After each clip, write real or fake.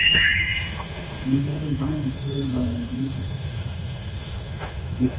fake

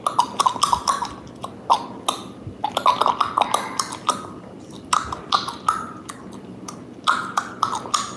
real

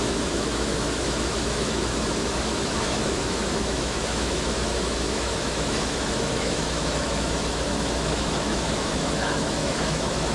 fake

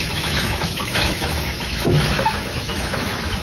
fake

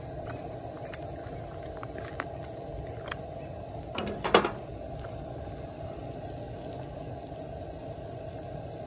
real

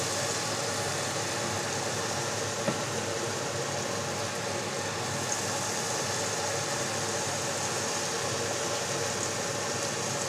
real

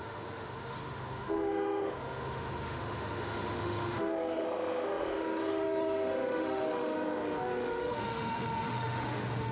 fake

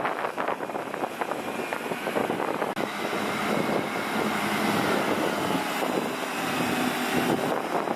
real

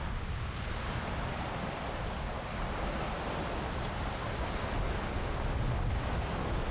real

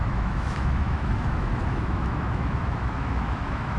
fake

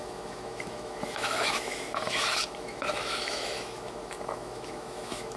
fake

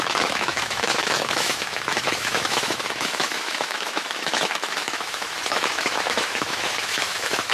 fake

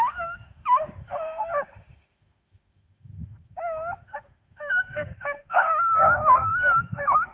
fake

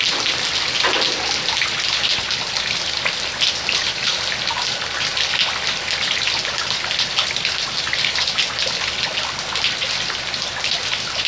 real